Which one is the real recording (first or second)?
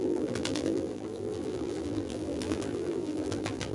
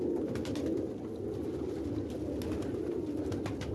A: second